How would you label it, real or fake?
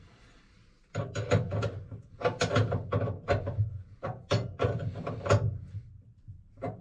real